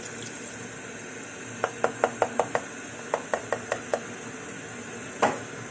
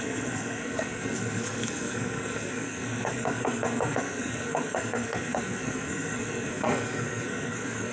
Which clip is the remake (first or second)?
second